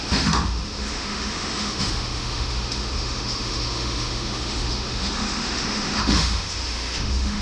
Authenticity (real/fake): fake